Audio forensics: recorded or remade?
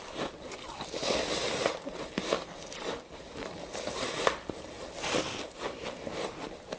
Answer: recorded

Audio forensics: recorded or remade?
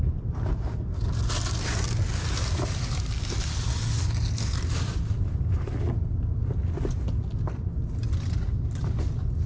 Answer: recorded